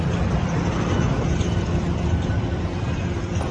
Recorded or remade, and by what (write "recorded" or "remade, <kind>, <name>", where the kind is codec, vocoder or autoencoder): remade, vocoder, BigVGAN v2